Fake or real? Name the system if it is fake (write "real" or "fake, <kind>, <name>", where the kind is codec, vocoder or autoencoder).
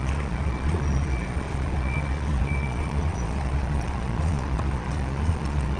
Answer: fake, vocoder, Vocos